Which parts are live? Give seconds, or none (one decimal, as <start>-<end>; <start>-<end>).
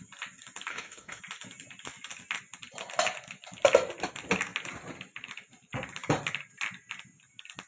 0.0-0.7; 1.2-7.7